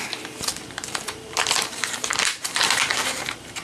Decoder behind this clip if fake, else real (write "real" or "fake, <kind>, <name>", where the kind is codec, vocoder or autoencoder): fake, vocoder, BigVGAN v2